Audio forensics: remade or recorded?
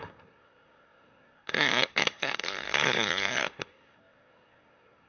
remade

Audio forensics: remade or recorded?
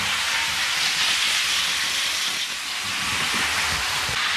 recorded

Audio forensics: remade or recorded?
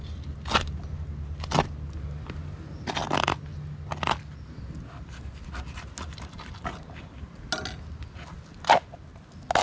recorded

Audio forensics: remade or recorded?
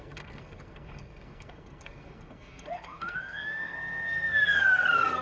remade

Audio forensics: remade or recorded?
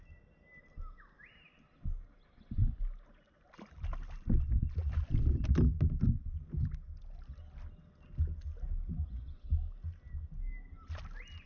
recorded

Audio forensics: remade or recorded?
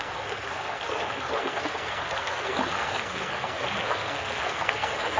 remade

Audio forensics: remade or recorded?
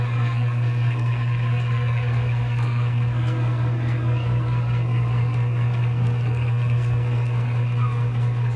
remade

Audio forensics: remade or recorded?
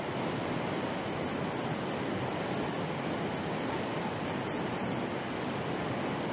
recorded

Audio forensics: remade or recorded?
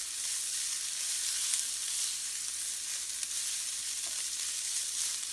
recorded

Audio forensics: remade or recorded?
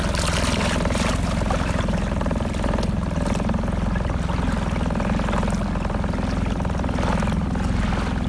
recorded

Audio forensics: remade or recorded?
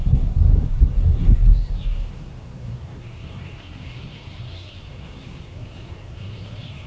remade